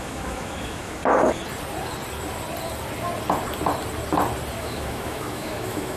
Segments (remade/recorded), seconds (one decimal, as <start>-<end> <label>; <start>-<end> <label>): 0.0-1.0 remade; 1.0-4.6 recorded; 4.6-6.0 remade